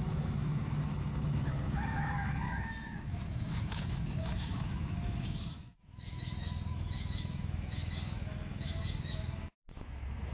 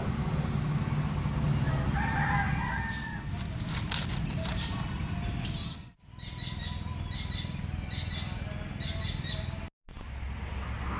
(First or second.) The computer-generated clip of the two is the first